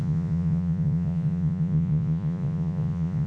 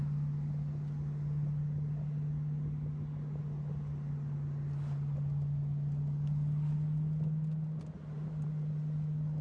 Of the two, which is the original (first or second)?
second